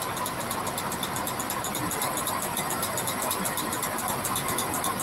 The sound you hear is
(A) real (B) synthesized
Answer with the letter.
A